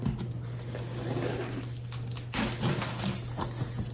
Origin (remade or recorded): recorded